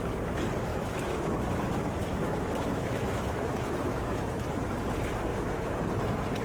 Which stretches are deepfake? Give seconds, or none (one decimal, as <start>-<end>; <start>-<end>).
0.7-4.5; 5.3-5.8